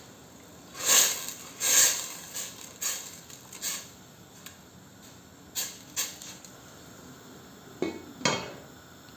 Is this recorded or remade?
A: recorded